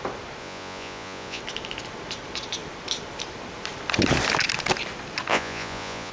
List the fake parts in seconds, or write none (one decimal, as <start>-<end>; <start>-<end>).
0.4-1.4; 5.3-6.1